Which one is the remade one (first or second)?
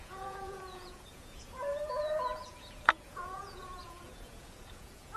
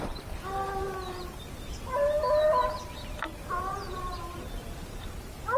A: first